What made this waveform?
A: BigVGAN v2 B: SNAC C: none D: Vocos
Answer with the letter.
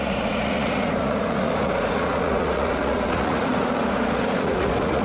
D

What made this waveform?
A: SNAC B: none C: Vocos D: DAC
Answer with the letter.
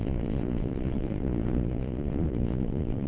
C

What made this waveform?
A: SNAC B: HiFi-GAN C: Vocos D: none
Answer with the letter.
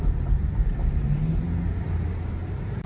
D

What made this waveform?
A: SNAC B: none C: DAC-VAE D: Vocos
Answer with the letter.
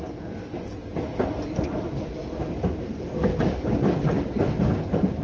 B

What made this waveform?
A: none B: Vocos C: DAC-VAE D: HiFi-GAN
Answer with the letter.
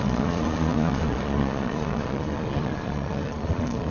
B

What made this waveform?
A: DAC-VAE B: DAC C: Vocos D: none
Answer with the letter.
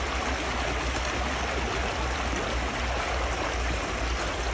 D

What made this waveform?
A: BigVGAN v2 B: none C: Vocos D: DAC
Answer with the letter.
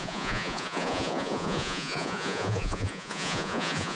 C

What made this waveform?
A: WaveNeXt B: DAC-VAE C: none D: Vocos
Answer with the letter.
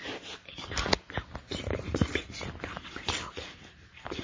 C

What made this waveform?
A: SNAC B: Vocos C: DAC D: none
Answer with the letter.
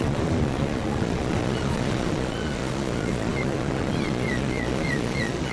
B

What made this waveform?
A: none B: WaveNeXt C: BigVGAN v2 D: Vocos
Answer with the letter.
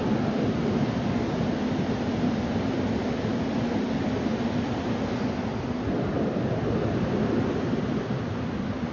A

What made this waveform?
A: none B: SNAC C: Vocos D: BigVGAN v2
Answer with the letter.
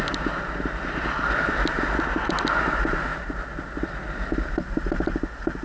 A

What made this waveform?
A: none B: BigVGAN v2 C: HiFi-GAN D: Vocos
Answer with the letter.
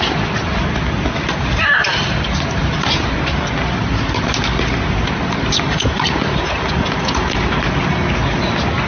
A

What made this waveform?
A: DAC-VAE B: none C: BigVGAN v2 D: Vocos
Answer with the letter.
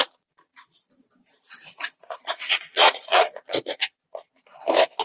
D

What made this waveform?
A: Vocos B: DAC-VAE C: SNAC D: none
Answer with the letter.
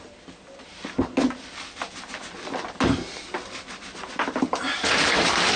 D